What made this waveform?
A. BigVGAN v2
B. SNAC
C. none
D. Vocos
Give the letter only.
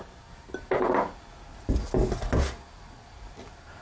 C